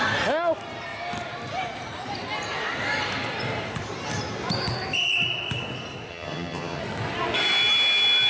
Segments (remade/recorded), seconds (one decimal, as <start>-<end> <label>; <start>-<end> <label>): 0.0-6.1 recorded; 6.1-6.8 remade; 6.8-8.3 recorded